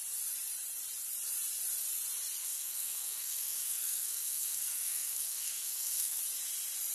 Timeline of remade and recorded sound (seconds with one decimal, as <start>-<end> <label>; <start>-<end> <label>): 0.0-2.4 recorded; 2.4-6.2 remade; 6.2-6.9 recorded